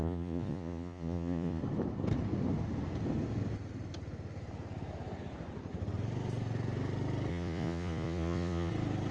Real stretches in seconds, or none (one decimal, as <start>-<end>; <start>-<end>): 1.6-7.3; 8.7-9.1